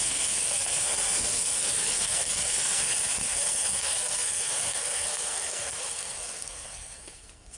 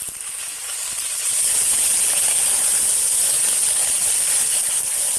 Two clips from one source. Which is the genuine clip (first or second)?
second